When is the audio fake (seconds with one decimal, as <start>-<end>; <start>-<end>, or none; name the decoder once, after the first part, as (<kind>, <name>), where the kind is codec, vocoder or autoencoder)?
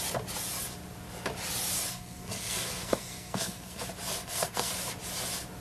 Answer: 1.9-3.8 (codec, SNAC); 4.2-4.7